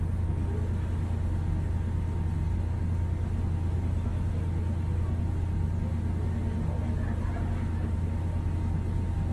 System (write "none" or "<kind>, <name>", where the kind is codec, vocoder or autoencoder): none